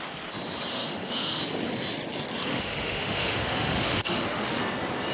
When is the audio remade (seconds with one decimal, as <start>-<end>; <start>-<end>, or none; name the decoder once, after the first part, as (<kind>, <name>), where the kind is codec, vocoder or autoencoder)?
0.7-1.4 (autoencoder, DAC-VAE); 2.5-4.6